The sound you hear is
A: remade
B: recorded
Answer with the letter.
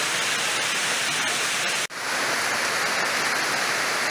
B